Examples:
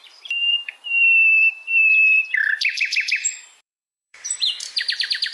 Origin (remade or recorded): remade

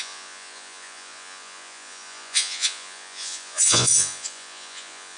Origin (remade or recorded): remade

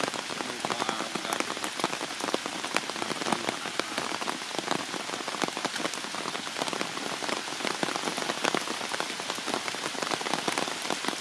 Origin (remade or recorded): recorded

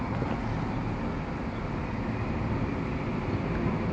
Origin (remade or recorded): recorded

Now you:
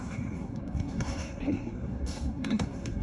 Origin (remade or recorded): remade